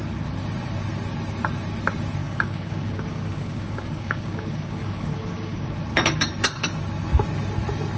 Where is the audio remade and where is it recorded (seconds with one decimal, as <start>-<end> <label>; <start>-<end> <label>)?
0.0-2.2 recorded; 2.2-5.7 remade; 5.7-8.0 recorded